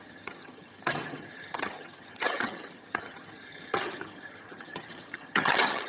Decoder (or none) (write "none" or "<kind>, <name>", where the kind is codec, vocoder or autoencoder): vocoder, HiFi-GAN